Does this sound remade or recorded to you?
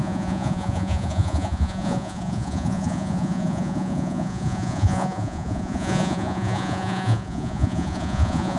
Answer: remade